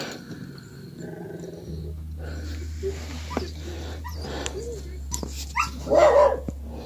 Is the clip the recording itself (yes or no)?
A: yes